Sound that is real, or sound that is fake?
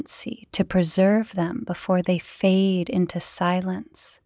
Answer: real